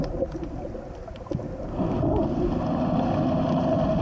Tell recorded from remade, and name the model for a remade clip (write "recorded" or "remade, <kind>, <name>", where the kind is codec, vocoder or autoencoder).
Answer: recorded